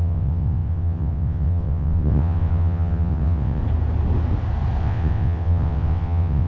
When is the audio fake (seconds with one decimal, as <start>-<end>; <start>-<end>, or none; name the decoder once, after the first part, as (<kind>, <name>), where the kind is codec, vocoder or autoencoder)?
0.0-3.6 (vocoder, WaveNeXt); 4.8-6.5